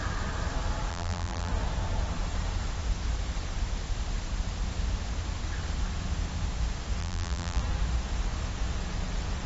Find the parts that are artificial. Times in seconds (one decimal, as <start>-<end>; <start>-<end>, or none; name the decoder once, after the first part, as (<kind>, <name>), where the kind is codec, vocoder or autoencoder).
0.9-1.5 (vocoder, BigVGAN v2); 7.0-7.6

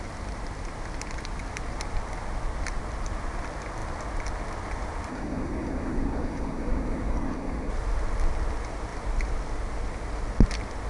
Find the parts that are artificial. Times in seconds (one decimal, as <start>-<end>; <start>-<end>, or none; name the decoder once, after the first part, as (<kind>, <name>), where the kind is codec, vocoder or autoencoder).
5.1-7.7 (codec, SNAC)

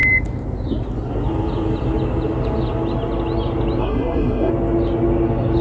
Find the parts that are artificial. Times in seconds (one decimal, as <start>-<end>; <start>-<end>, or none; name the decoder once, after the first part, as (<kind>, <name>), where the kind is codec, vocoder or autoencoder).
3.8-4.5 (codec, SNAC)